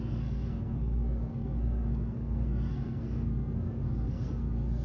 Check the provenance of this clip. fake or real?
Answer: fake